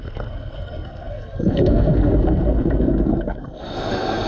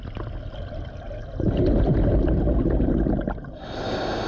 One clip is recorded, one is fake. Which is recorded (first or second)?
second